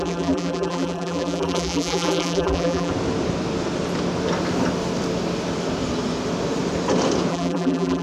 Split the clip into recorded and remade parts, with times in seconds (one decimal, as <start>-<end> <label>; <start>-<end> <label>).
0.0-2.9 remade; 2.9-7.3 recorded; 7.3-8.0 remade